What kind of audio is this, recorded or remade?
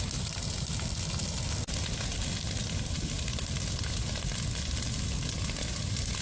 recorded